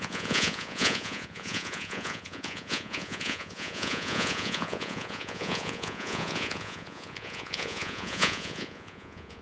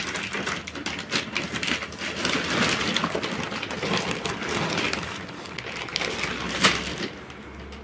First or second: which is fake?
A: first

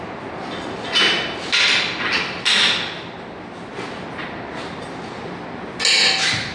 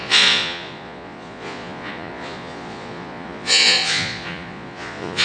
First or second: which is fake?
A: second